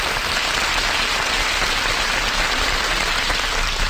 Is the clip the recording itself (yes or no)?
no